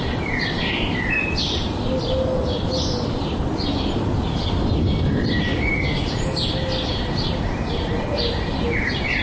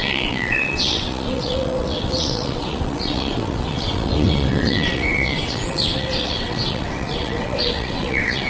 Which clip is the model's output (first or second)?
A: second